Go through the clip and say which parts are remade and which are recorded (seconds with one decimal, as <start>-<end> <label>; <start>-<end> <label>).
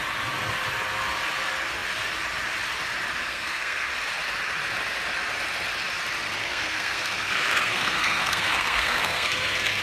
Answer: 0.0-3.2 recorded; 3.2-3.9 remade; 3.9-6.4 recorded; 6.4-9.8 remade